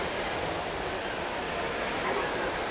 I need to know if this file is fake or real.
real